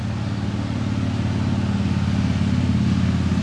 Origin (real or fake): real